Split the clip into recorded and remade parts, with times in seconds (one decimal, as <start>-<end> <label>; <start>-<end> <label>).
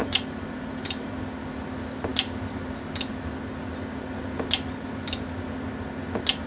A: 0.0-1.1 remade; 1.1-6.5 recorded